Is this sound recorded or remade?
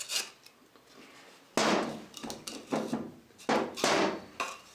recorded